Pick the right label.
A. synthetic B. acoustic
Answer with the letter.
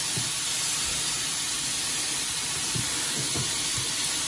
B